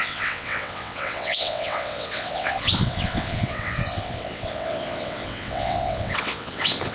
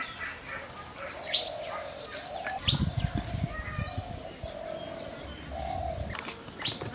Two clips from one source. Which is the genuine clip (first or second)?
second